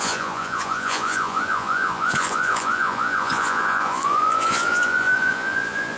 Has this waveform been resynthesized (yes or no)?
yes